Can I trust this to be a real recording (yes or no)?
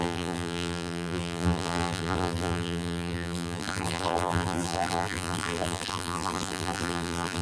no